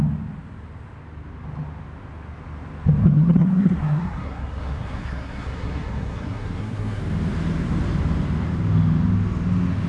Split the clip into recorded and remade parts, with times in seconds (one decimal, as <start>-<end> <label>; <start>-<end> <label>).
0.0-3.0 recorded; 3.0-7.0 remade; 7.0-9.9 recorded